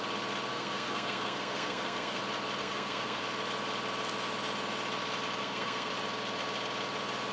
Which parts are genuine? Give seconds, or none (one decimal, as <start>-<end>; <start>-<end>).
0.0-0.5; 2.2-2.6; 3.2-5.4; 5.9-7.3